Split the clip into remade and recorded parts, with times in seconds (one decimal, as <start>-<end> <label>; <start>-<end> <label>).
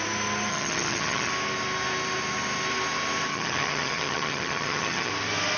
0.0-0.5 recorded; 0.5-1.3 remade; 1.3-3.3 recorded; 3.3-5.1 remade; 5.1-5.6 recorded